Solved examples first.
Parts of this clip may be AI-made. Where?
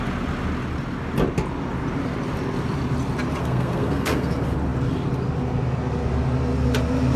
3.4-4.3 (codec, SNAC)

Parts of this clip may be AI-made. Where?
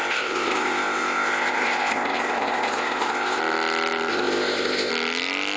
0.0-3.4 (codec, ZipCodec); 4.1-4.9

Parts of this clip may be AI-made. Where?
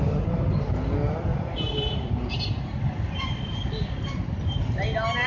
1.3-4.4 (vocoder, BigVGAN v2)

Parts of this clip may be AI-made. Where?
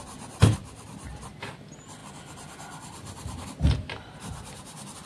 0.6-1.5 (vocoder, BigVGAN v2); 2.0-5.1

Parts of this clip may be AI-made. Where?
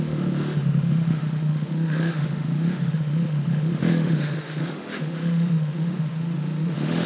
0.0-7.1 (autoencoder, DAC-VAE)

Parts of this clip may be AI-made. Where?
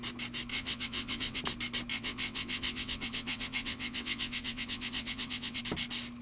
0.5-1.4 (vocoder, WaveNeXt); 1.9-5.6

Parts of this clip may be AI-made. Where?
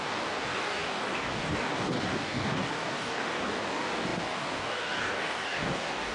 0.0-6.1 (codec, DAC)